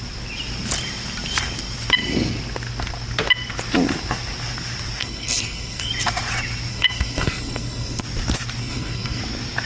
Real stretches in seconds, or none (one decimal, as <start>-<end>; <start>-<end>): 0.0-5.0; 5.9-6.7; 8.0-8.6; 9.2-9.7